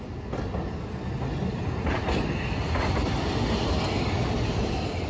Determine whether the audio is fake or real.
real